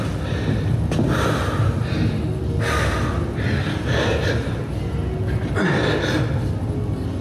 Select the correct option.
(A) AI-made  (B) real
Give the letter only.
B